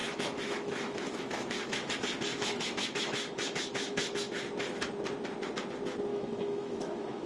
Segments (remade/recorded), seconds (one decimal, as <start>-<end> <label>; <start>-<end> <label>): 0.0-1.9 remade; 1.9-2.3 recorded; 2.3-4.4 remade; 4.4-6.1 recorded; 6.1-7.3 remade